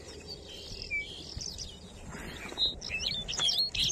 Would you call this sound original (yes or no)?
yes